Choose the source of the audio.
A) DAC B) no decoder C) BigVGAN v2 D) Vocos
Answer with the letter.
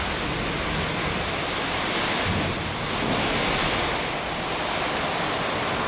B